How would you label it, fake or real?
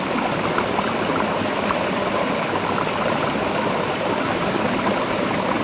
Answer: real